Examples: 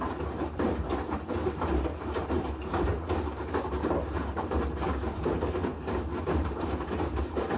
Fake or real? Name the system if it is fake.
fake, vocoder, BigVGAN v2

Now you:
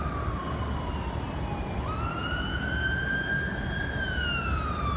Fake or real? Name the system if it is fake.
real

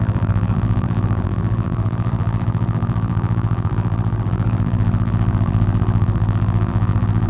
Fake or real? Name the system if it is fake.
fake, vocoder, BigVGAN v2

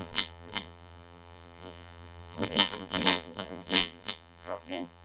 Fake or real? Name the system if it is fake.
fake, vocoder, BigVGAN v2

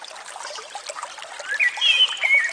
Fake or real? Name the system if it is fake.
real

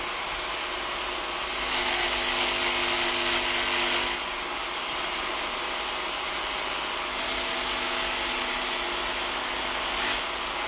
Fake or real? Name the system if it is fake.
real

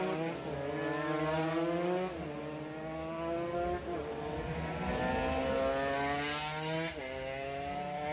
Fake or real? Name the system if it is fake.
real